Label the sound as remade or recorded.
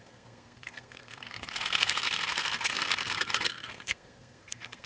remade